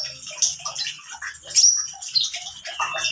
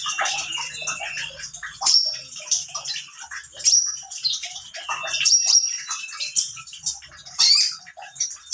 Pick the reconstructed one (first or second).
second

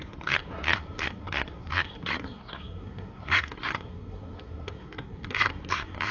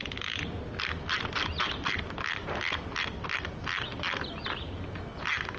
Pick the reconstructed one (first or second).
first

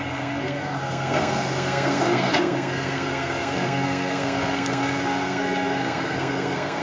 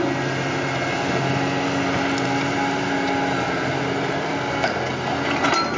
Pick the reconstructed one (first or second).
first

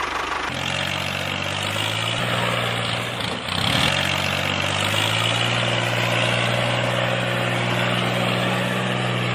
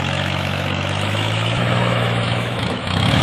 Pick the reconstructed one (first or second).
second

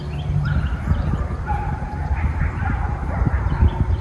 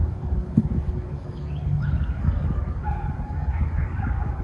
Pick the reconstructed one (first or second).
second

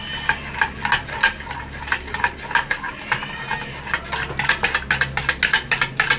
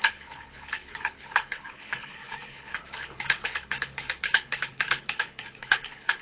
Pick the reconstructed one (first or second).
second